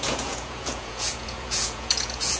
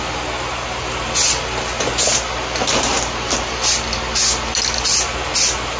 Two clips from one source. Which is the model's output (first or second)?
first